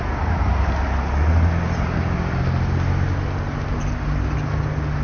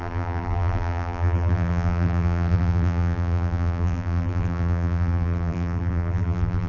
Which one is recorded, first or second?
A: first